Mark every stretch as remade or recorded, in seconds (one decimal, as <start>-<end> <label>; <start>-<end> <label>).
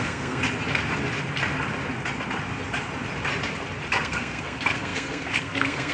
0.0-0.4 remade; 0.4-3.9 recorded; 3.9-5.9 remade